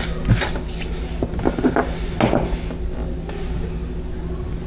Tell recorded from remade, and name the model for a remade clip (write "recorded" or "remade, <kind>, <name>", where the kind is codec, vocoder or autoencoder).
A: recorded